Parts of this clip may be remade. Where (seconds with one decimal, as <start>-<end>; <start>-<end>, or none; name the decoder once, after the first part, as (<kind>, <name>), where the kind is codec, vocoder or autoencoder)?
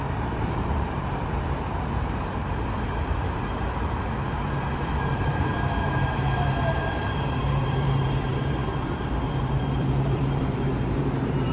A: 0.0-11.5 (vocoder, BigVGAN v2)